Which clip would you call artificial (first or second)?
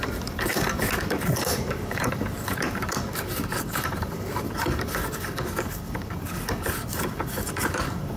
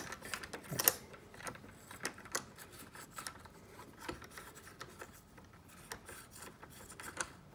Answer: first